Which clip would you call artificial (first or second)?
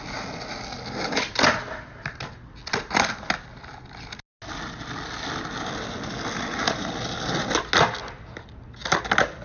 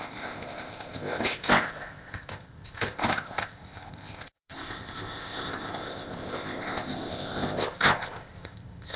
second